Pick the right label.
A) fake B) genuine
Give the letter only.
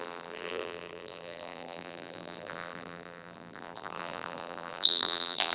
A